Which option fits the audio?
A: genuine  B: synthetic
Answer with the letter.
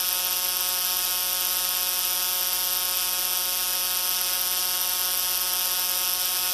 A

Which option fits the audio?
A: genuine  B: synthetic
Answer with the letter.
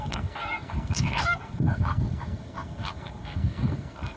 B